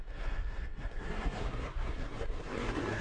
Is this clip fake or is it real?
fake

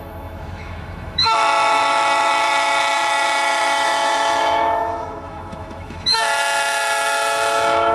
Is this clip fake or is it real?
fake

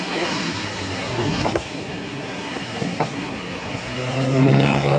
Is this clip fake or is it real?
fake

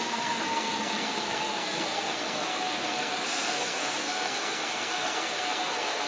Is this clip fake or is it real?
fake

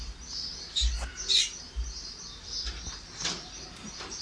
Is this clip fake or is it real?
real